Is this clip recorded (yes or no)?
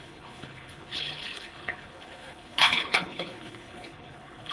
no